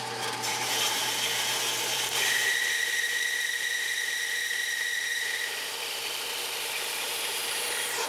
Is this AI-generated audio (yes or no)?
yes